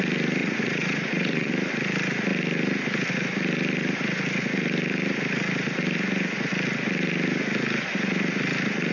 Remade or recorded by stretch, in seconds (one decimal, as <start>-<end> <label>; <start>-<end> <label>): 0.0-0.4 recorded; 0.4-1.5 remade; 1.5-8.9 recorded

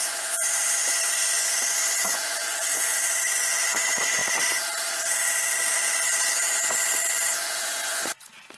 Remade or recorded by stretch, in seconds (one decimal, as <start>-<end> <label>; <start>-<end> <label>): 0.0-4.2 remade; 4.2-7.3 recorded; 7.3-8.6 remade

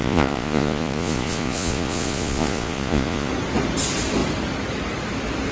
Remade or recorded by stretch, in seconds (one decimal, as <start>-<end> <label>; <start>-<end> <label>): 0.0-3.3 remade; 3.3-5.5 recorded

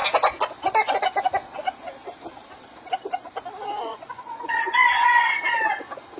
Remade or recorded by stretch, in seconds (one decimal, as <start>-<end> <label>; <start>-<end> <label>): 0.0-3.9 recorded; 3.9-5.4 remade; 5.4-6.2 recorded

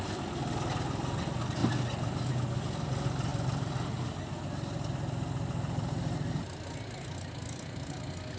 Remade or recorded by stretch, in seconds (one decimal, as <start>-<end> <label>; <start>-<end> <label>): 0.0-8.4 recorded

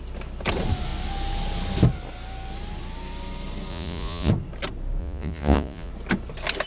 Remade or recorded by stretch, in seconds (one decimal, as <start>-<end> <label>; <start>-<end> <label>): 0.0-3.7 recorded; 3.7-4.3 remade; 4.3-5.0 recorded; 5.0-5.9 remade; 5.9-6.7 recorded

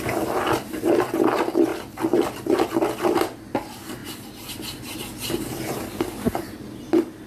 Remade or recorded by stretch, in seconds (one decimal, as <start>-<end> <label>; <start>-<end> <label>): 0.0-7.3 recorded

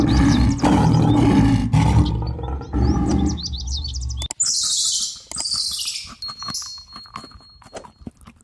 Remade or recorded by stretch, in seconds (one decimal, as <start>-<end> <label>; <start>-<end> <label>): 0.0-8.4 recorded